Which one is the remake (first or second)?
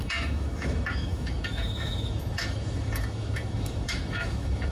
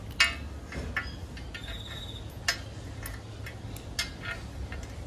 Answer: first